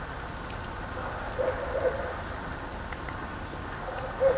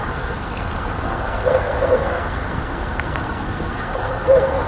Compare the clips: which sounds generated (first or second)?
second